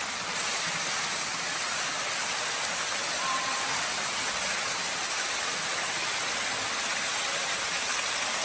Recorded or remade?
recorded